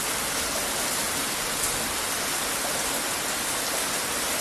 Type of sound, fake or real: real